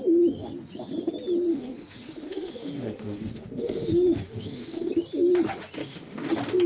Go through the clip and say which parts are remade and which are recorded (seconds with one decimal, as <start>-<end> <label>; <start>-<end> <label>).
0.0-1.5 recorded; 1.5-4.9 remade; 4.9-5.8 recorded; 5.8-6.3 remade; 6.3-6.7 recorded